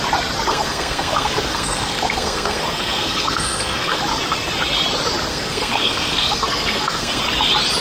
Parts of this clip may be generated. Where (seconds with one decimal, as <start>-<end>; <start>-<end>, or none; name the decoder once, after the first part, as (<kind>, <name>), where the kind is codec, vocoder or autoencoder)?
0.5-4.0 (codec, SNAC); 5.3-7.2